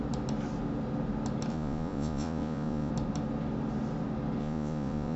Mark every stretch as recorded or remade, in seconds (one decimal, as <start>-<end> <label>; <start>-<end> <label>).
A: 0.0-1.5 recorded; 1.5-2.9 remade; 2.9-4.4 recorded; 4.4-5.2 remade